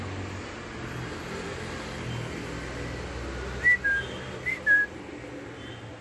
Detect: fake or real real